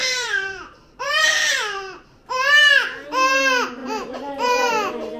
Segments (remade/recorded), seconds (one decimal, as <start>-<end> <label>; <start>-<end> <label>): 0.0-1.6 remade; 1.6-3.8 recorded; 3.8-4.7 remade; 4.7-5.2 recorded